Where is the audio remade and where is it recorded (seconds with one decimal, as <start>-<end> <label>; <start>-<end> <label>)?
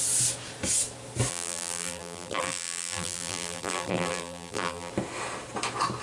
0.0-1.3 recorded; 1.3-4.9 remade; 4.9-6.0 recorded